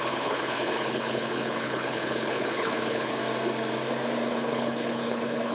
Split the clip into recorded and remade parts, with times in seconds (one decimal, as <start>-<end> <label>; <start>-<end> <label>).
0.0-3.2 remade; 3.2-4.3 recorded; 4.3-5.5 remade